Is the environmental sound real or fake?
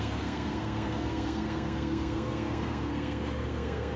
fake